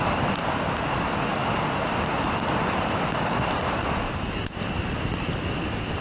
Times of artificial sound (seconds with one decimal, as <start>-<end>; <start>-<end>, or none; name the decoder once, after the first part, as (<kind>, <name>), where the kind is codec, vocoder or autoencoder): 0.0-0.4 (vocoder, BigVGAN v2); 0.9-1.3; 4.9-6.0